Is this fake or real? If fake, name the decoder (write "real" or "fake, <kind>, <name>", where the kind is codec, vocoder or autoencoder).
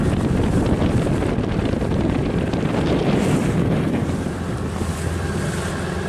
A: fake, vocoder, BigVGAN v2